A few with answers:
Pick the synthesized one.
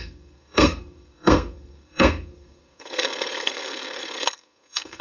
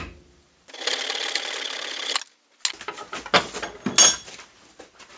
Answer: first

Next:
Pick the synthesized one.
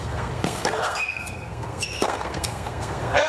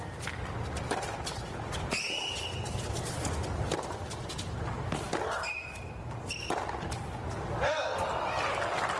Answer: first